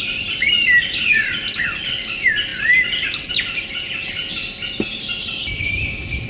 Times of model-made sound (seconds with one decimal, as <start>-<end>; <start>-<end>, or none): none